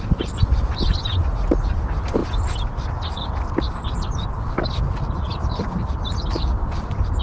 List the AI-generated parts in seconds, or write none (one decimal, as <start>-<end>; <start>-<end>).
none